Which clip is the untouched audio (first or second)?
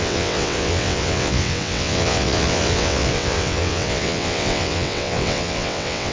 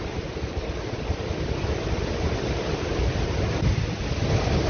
second